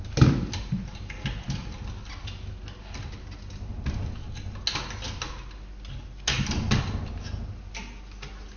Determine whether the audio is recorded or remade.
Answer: recorded